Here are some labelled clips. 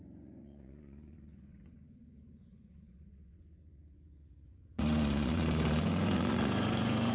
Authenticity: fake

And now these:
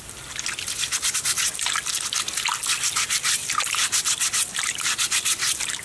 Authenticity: real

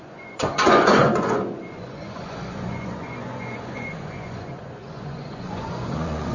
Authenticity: fake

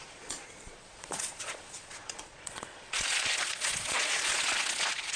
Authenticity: fake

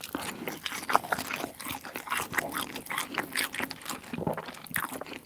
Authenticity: real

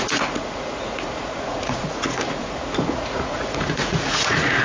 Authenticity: fake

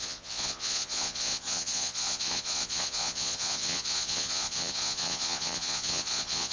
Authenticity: fake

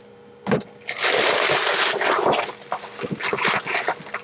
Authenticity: real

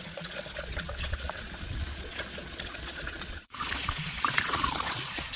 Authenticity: fake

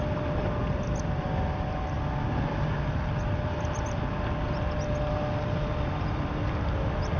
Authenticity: real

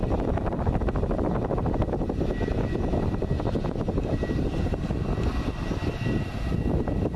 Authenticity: real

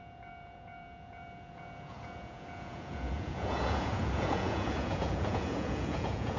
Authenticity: fake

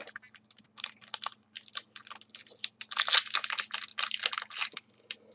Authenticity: real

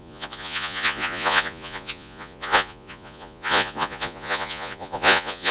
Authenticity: fake